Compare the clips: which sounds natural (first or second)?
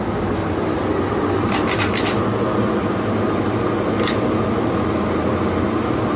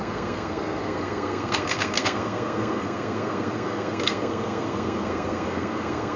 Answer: first